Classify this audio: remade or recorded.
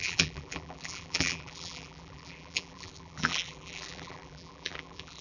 remade